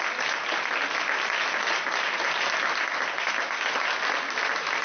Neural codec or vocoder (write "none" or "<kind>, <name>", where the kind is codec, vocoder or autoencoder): none